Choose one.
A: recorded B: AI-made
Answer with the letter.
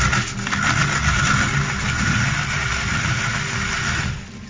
A